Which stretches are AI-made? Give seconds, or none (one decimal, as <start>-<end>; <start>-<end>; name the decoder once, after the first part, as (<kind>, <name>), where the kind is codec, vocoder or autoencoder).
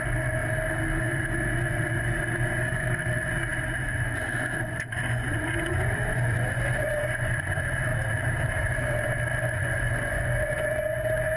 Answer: 0.0-0.4 (vocoder, Vocos); 1.0-7.9; 8.6-11.4